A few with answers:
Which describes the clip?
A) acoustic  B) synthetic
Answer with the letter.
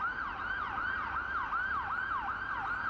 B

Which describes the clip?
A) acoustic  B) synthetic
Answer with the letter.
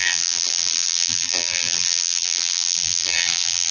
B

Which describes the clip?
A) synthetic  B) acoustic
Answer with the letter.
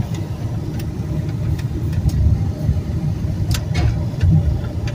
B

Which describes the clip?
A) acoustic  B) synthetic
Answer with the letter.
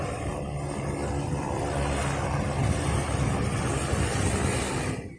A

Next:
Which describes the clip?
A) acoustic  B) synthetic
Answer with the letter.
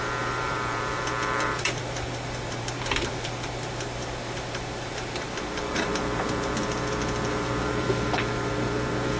B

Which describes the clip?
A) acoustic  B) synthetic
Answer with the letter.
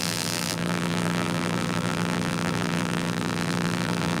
B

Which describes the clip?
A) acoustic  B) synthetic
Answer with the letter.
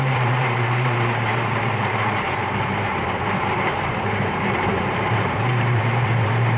B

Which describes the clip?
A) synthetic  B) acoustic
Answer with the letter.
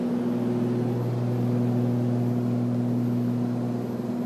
B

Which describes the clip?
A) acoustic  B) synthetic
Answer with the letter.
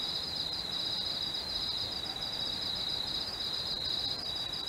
B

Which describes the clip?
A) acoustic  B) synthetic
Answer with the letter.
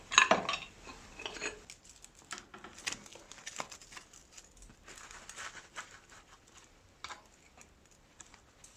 A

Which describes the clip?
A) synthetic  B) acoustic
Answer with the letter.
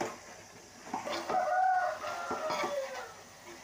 B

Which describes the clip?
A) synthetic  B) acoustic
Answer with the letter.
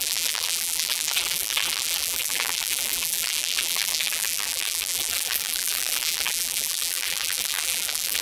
A